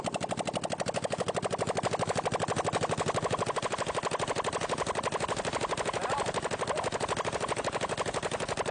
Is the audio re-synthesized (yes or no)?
no